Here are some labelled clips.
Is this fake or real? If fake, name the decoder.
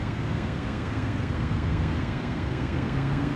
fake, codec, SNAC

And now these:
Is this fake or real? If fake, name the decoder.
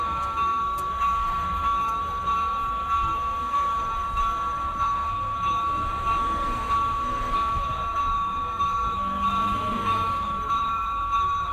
fake, codec, SNAC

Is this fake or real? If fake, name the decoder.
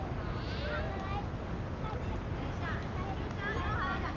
real